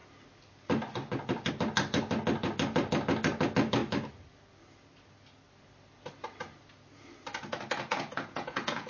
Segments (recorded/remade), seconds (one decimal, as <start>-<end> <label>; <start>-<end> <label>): 0.0-7.9 recorded; 7.9-8.9 remade